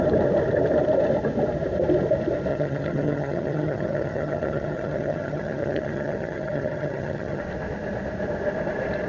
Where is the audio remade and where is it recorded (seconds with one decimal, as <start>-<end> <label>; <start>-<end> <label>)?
0.0-2.5 recorded; 2.5-7.4 remade; 7.4-9.1 recorded